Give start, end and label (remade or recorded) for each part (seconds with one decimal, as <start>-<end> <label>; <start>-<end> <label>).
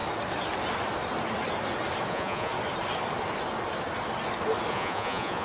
0.0-2.1 recorded; 2.1-2.5 remade; 2.5-4.7 recorded; 4.7-5.4 remade